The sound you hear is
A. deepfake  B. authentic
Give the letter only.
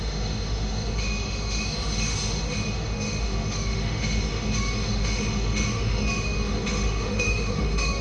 A